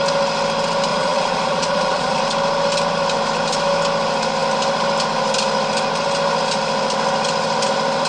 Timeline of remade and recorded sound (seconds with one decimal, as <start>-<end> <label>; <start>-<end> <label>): 0.0-0.9 recorded; 0.9-2.2 remade; 2.2-8.1 recorded